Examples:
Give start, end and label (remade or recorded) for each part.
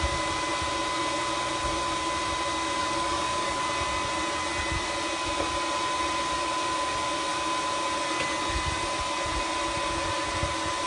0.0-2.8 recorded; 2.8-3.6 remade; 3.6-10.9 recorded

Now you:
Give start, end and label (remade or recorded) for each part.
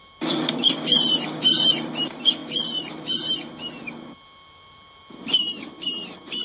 0.0-6.4 recorded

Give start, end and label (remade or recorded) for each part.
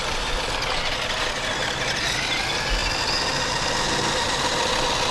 0.0-5.1 recorded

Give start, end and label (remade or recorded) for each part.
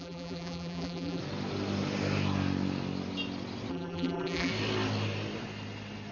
0.0-1.2 remade; 1.2-3.7 recorded; 3.7-4.5 remade; 4.5-6.1 recorded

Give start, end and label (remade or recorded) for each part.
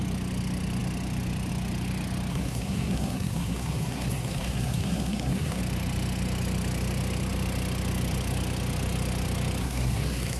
0.0-2.3 recorded; 2.3-5.6 remade; 5.6-9.6 recorded; 9.6-10.4 remade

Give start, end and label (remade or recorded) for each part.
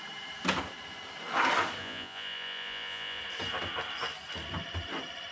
0.0-1.8 recorded; 1.8-3.2 remade; 3.2-5.3 recorded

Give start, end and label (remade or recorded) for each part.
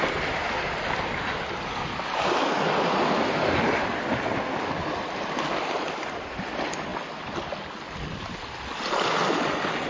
0.0-9.9 recorded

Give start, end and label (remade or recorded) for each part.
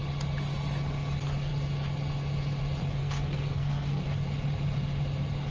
0.0-3.0 recorded; 3.0-4.0 remade; 4.0-5.5 recorded